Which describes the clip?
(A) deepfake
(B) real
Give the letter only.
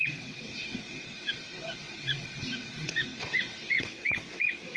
A